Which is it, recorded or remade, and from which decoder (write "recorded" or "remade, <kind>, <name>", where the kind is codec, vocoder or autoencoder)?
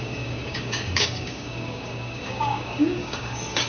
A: remade, codec, DAC